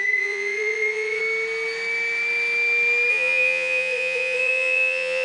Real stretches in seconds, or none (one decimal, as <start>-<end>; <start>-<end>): 1.2-3.1